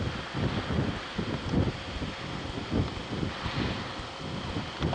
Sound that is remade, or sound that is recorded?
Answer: recorded